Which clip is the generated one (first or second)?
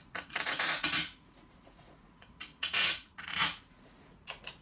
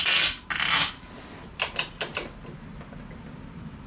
first